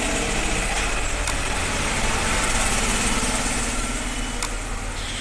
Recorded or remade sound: recorded